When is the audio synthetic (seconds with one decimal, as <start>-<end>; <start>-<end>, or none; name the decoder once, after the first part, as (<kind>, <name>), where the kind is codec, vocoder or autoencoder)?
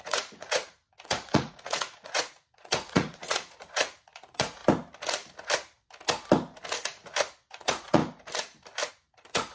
0.0-4.6 (vocoder, Vocos); 7.5-8.0; 8.9-9.5